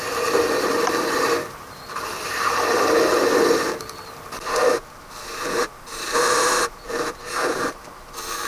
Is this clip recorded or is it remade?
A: remade